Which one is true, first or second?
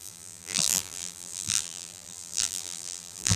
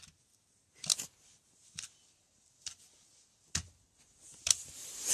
second